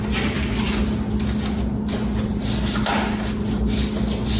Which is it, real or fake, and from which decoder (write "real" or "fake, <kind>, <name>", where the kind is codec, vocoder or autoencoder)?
real